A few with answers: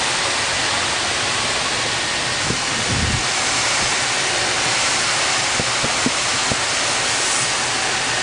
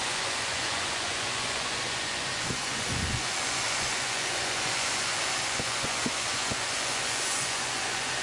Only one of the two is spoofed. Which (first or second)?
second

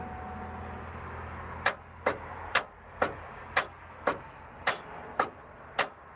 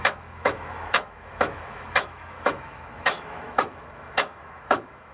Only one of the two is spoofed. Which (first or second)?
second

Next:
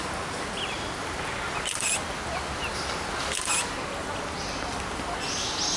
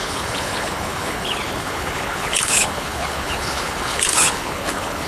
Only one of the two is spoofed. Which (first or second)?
second